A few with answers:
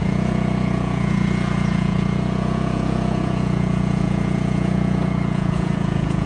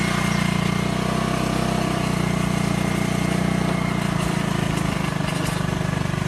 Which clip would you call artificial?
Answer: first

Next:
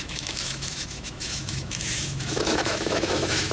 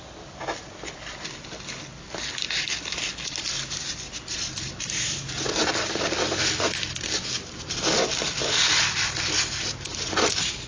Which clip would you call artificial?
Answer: first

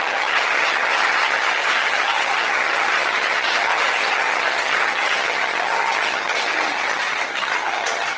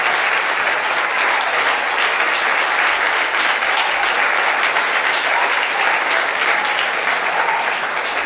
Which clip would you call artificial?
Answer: first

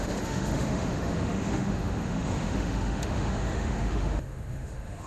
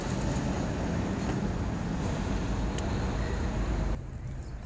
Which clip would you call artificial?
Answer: first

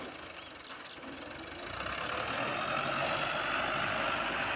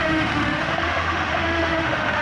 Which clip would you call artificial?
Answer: second